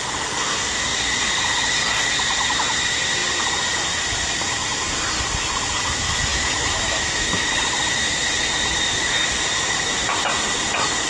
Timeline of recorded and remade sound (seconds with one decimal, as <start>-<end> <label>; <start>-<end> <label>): 0.0-6.3 recorded; 6.3-7.5 remade; 7.5-11.1 recorded